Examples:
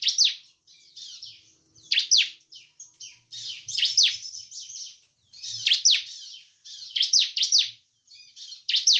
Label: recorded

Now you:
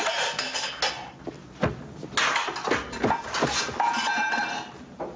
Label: recorded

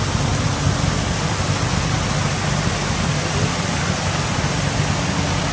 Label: recorded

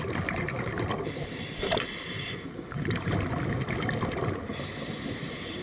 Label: recorded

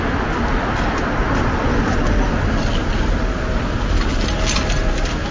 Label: recorded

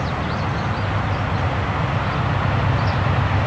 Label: recorded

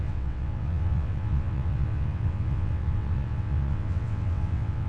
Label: remade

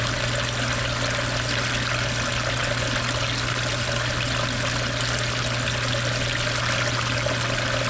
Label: recorded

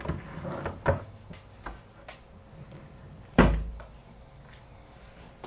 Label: recorded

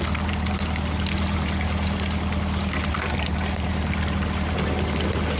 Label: recorded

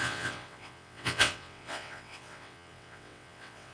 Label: remade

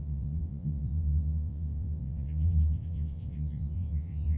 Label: remade